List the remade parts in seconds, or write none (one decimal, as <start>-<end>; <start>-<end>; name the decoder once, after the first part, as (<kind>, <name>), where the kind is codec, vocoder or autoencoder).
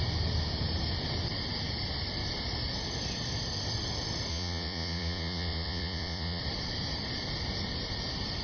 4.3-6.4 (vocoder, Vocos)